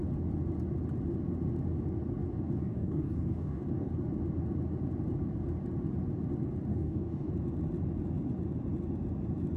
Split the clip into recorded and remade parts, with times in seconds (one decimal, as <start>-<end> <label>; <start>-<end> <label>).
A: 0.0-2.6 recorded; 2.6-3.9 remade; 3.9-6.7 recorded; 6.7-7.3 remade; 7.3-9.6 recorded